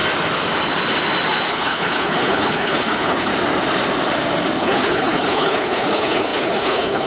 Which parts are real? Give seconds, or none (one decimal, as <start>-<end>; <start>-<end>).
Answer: 0.0-1.5; 3.3-4.6